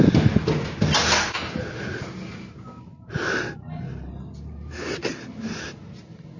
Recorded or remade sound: recorded